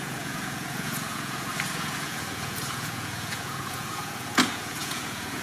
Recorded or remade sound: remade